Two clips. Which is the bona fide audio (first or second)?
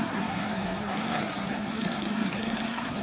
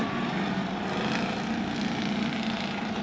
second